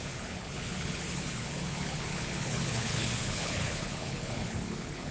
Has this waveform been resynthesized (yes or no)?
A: yes